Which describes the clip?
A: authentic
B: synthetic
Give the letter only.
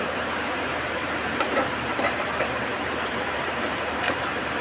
B